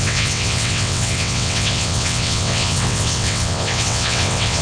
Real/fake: fake